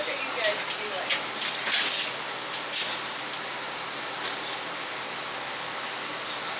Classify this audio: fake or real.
real